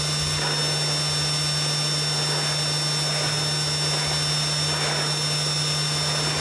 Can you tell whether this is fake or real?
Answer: real